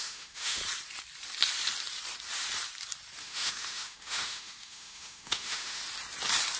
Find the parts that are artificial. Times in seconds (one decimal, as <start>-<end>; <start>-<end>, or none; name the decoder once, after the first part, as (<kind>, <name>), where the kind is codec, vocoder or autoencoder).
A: 0.0-0.6 (autoencoder, DAC-VAE); 3.2-5.8